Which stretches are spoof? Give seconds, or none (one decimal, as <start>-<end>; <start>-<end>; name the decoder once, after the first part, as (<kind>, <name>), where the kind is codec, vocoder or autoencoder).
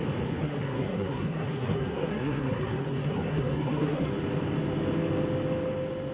0.4-4.1 (codec, SNAC)